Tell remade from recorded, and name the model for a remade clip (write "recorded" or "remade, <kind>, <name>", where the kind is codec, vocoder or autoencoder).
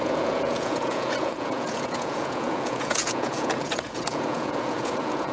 remade, vocoder, Vocos